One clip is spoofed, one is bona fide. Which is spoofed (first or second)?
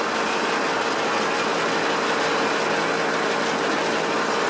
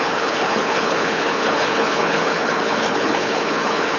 second